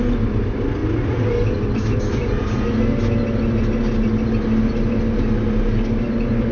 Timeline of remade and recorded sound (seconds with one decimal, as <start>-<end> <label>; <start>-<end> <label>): 0.0-6.5 recorded